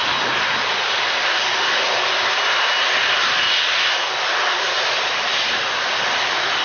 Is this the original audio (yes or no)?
yes